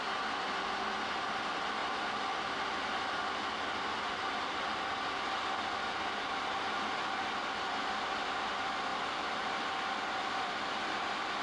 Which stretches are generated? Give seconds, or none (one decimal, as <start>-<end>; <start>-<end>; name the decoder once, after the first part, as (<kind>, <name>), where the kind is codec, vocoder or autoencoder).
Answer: none